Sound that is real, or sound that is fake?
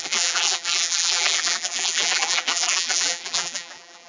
fake